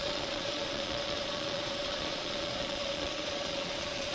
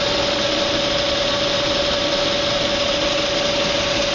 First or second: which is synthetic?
first